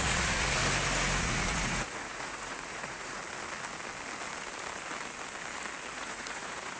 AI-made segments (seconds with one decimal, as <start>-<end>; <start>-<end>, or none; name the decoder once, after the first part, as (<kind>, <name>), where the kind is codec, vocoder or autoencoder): 0.0-0.6 (vocoder, Vocos); 1.2-3.2; 5.9-6.8

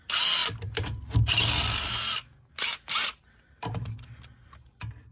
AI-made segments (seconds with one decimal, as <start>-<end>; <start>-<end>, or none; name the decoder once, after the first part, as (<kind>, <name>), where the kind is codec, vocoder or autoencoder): none